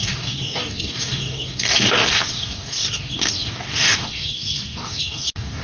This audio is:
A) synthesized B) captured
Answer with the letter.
A